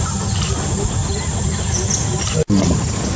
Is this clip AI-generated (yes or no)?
no